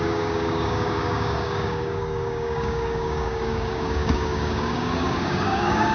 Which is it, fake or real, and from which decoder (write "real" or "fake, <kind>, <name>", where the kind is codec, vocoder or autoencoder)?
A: fake, codec, DAC